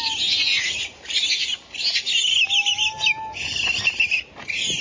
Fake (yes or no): no